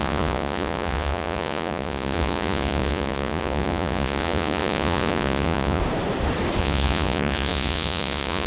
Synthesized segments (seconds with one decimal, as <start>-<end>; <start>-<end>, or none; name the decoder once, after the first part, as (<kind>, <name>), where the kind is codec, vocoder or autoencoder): 0.0-5.8 (vocoder, Vocos); 6.6-8.5